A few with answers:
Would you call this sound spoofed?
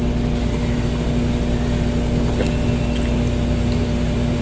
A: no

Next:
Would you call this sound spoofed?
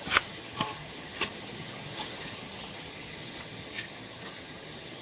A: yes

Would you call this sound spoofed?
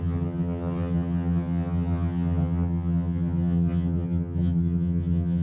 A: yes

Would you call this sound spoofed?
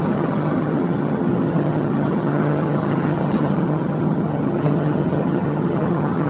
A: yes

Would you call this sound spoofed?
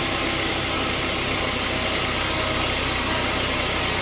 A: no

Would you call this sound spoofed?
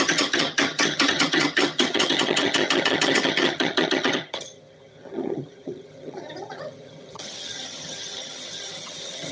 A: yes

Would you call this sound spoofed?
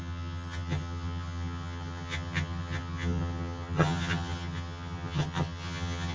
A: yes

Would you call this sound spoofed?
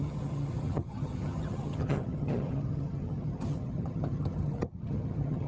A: yes